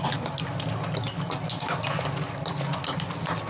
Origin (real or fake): real